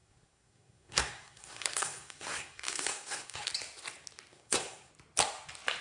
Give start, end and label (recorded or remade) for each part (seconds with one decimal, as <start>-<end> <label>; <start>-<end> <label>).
0.0-3.5 remade; 3.5-4.3 recorded; 4.3-4.9 remade; 4.9-5.8 recorded